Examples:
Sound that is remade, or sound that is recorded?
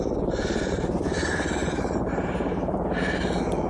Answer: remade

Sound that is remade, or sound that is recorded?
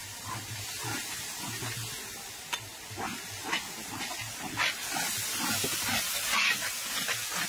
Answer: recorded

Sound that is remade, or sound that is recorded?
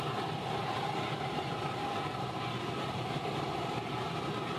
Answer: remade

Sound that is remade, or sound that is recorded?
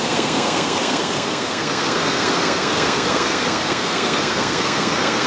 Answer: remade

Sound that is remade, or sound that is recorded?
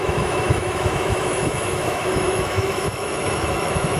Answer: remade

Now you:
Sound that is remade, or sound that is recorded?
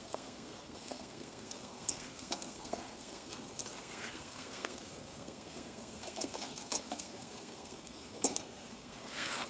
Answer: remade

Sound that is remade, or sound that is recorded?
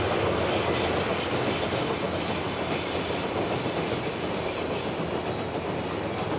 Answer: recorded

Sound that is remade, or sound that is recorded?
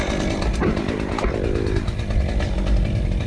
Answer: recorded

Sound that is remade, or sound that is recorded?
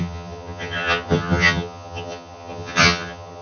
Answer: remade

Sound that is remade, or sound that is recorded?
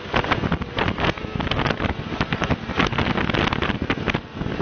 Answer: recorded